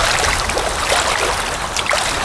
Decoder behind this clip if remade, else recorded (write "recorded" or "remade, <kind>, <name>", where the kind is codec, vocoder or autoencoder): recorded